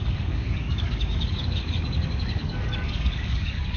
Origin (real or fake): fake